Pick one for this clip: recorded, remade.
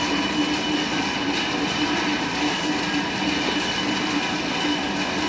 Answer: recorded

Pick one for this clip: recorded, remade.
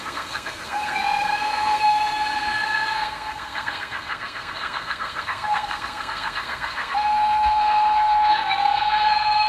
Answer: remade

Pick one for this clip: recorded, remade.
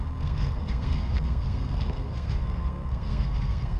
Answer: remade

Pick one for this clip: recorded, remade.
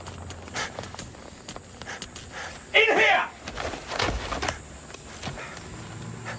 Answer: recorded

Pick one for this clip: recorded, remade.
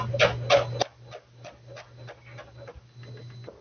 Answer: recorded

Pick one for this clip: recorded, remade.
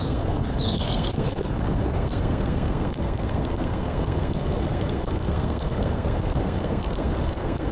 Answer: remade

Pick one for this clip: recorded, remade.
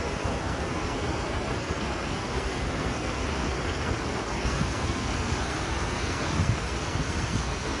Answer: remade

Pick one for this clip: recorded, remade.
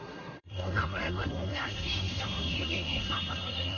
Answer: remade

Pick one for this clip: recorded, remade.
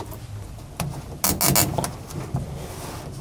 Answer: recorded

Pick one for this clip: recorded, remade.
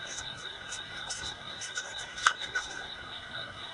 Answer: remade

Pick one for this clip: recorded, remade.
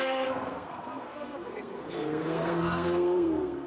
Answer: remade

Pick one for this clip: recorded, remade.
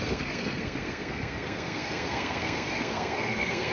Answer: remade